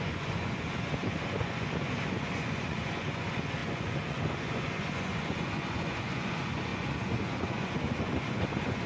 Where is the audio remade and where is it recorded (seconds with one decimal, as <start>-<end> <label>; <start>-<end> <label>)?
0.0-8.9 remade